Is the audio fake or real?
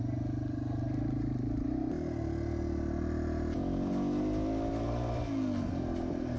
real